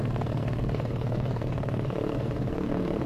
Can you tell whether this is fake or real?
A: fake